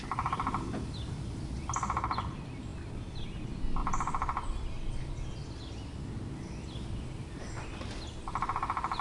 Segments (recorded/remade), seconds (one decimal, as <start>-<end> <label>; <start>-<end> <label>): 0.0-9.0 recorded